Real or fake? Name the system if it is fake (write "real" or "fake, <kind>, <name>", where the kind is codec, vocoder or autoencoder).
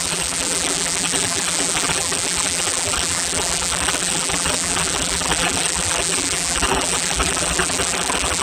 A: fake, vocoder, BigVGAN v2